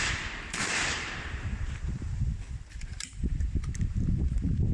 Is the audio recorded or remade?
remade